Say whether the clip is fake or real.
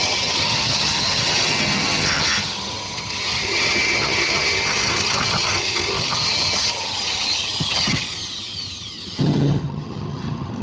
fake